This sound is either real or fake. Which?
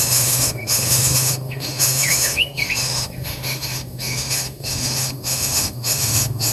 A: fake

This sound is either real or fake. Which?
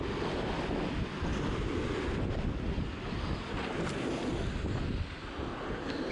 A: real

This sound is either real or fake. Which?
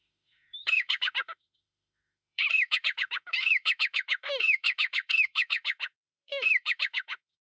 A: fake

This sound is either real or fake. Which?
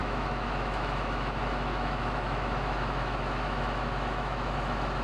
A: fake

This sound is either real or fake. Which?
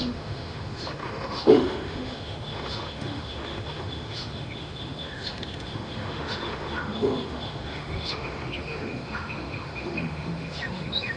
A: fake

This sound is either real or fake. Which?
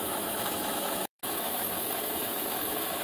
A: fake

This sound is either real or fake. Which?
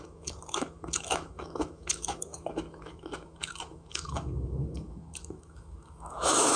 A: fake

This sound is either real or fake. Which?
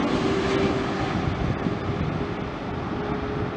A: real